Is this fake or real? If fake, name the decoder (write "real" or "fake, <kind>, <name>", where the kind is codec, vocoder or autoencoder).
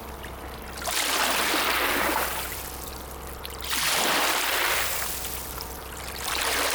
real